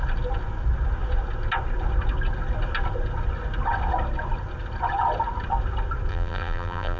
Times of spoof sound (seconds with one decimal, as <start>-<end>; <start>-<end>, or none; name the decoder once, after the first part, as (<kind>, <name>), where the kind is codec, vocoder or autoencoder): 6.1-7.0 (vocoder, BigVGAN v2)

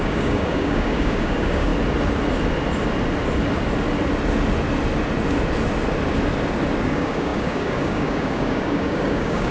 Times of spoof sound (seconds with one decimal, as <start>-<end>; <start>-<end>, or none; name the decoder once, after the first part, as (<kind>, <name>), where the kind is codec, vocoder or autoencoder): 0.0-1.7 (codec, DAC); 6.8-9.5

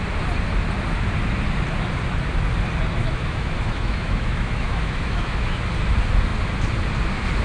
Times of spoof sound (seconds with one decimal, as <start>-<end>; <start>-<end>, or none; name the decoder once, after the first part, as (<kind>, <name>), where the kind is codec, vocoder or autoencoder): 3.0-5.6 (autoencoder, DAC-VAE)

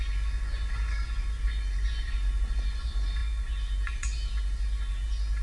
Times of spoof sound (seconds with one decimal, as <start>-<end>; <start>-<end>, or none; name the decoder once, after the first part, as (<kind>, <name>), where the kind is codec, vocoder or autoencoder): 0.0-5.4 (vocoder, Vocos)